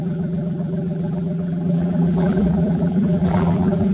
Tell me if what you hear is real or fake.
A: fake